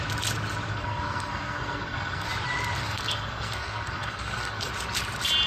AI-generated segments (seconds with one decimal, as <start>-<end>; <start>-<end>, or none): 0.7-2.3; 2.8-4.7